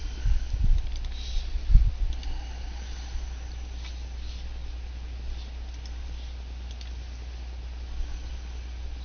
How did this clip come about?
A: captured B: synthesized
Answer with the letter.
A